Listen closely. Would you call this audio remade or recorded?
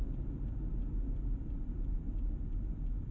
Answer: remade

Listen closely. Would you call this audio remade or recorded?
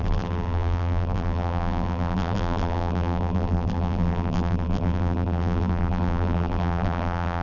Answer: remade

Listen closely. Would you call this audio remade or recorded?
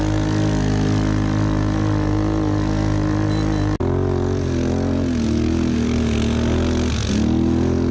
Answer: recorded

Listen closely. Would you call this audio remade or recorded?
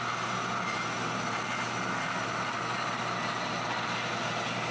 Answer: recorded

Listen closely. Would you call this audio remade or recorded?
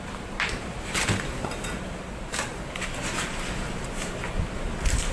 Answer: remade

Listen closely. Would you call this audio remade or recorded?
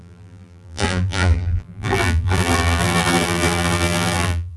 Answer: remade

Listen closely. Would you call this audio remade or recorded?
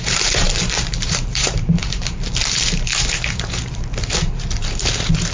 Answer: remade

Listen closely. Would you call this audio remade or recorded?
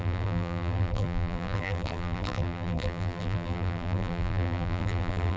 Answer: remade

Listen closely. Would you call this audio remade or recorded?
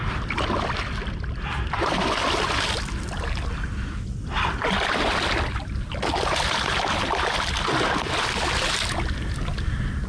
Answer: recorded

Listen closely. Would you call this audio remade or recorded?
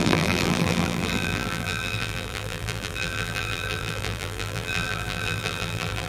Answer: remade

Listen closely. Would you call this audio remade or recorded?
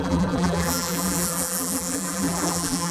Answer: remade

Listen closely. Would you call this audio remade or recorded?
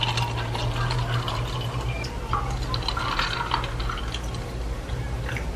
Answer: recorded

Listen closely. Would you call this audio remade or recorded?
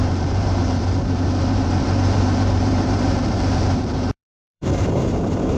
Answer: remade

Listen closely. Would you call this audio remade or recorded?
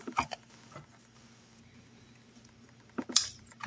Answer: remade